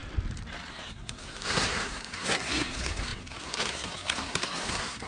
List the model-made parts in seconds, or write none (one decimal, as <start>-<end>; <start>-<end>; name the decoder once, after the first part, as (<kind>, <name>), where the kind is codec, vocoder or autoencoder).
0.7-5.1 (codec, SNAC)